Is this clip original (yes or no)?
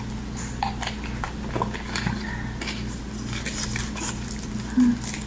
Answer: yes